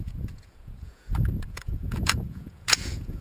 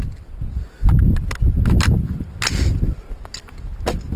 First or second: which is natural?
second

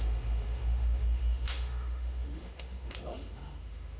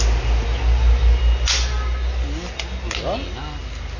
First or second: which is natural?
second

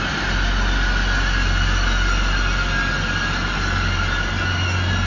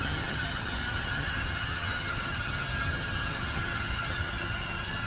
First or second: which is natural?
first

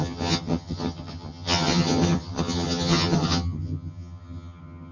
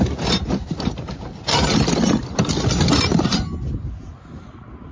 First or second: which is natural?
second